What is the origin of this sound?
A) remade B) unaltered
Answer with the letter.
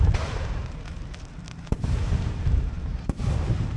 A